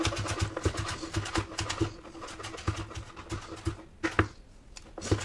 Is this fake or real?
real